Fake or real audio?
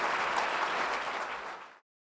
real